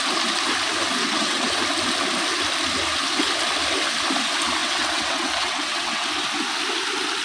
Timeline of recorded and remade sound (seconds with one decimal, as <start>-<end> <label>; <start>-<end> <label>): 0.0-1.0 recorded; 1.0-1.6 remade; 1.6-4.6 recorded; 4.6-6.1 remade; 6.1-7.2 recorded